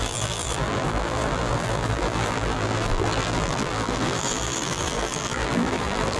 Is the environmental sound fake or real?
fake